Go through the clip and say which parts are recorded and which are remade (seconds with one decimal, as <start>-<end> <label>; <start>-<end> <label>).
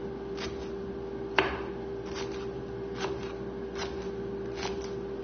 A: 0.0-5.2 recorded